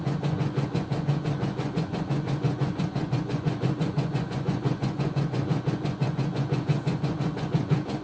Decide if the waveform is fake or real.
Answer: fake